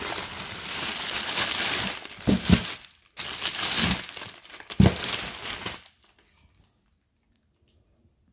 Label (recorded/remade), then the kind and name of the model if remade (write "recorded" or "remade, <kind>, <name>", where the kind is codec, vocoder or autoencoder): recorded